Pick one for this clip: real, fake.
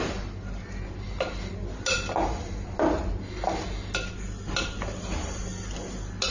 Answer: real